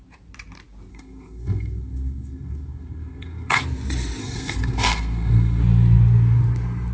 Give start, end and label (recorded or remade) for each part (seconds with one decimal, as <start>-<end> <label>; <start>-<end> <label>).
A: 0.0-0.9 recorded; 0.9-3.6 remade; 3.6-4.2 recorded; 4.2-5.6 remade; 5.6-6.9 recorded